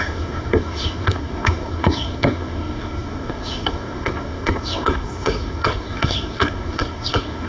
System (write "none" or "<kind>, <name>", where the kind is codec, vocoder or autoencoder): codec, SNAC